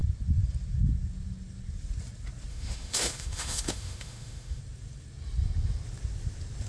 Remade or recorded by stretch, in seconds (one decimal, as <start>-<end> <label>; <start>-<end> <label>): 0.0-2.5 recorded; 2.5-4.6 remade; 4.6-6.7 recorded